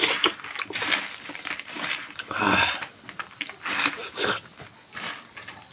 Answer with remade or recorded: recorded